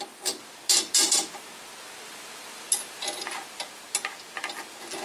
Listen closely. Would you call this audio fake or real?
real